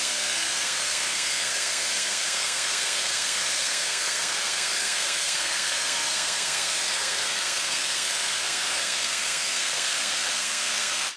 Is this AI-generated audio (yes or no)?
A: yes